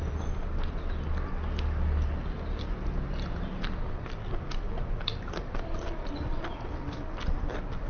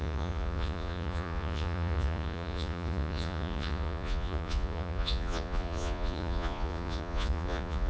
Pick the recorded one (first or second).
first